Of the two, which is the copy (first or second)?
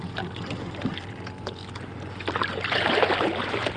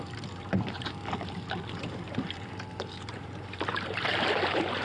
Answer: second